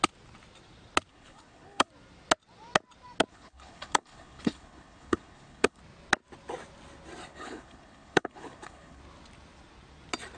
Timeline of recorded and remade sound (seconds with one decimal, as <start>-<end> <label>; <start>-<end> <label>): 0.0-1.1 recorded; 1.1-1.9 remade; 1.9-3.3 recorded; 3.3-5.8 remade; 5.8-7.3 recorded; 7.3-9.0 remade; 9.0-10.4 recorded